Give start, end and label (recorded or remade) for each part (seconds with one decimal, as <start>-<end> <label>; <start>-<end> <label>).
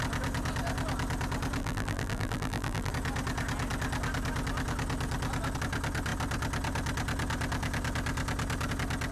0.0-1.6 recorded; 1.6-2.9 remade; 2.9-9.1 recorded